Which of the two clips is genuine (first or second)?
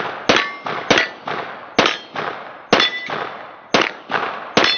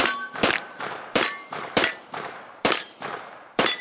first